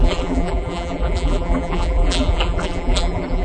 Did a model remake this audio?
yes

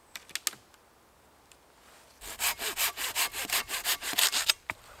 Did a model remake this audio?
no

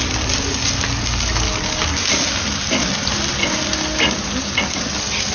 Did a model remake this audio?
no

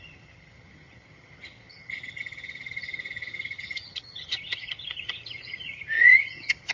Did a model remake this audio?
yes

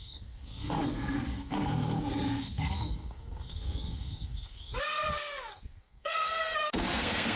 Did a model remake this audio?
yes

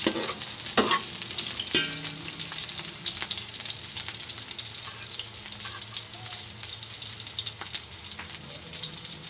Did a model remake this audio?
no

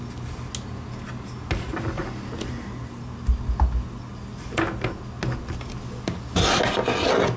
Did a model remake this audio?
no